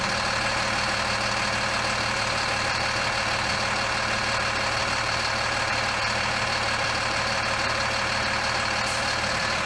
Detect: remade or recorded recorded